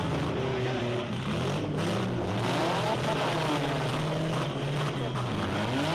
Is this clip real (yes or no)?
yes